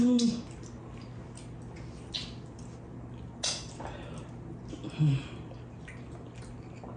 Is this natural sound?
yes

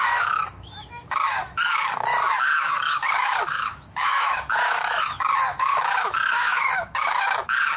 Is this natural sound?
no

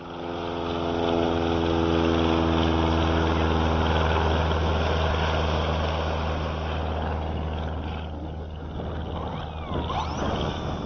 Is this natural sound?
yes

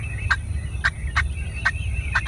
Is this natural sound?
yes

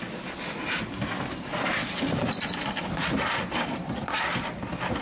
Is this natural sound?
yes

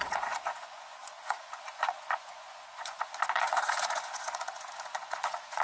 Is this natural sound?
no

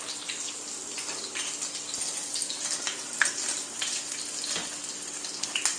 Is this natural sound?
yes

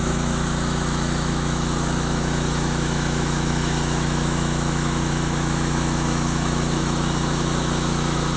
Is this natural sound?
no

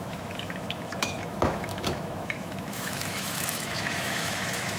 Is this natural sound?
no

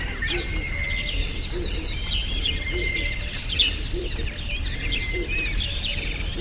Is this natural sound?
no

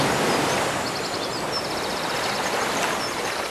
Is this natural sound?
yes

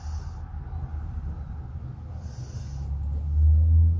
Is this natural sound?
yes